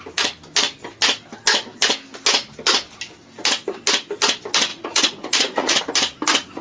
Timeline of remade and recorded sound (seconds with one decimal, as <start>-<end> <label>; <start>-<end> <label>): 0.0-4.7 recorded; 4.7-5.8 remade; 5.8-6.6 recorded